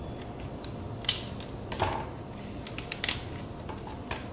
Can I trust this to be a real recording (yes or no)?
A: yes